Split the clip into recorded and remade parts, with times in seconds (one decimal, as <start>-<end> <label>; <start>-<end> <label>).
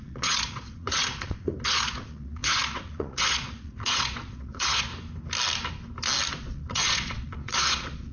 0.0-4.9 remade; 4.9-6.3 recorded; 6.3-8.1 remade